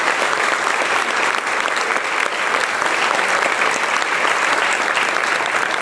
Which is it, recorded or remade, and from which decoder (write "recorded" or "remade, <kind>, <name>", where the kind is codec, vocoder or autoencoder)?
remade, vocoder, BigVGAN v2